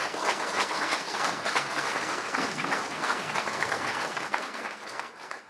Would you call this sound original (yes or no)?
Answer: no